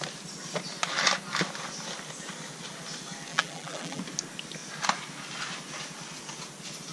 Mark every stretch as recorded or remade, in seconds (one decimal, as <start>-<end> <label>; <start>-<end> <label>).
0.0-3.3 recorded; 3.3-4.0 remade; 4.0-6.9 recorded